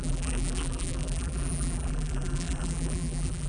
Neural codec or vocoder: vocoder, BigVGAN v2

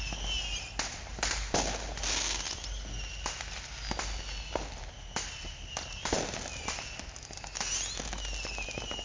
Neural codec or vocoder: none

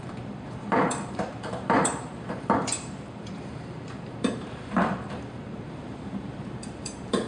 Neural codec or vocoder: vocoder, BigVGAN v2